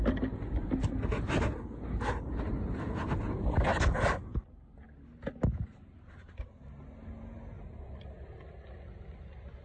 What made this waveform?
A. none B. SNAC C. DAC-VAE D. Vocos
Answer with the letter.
A